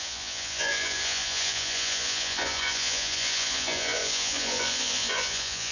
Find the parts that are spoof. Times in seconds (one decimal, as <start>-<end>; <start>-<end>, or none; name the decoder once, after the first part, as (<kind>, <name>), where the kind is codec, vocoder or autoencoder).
0.0-5.7 (vocoder, Vocos)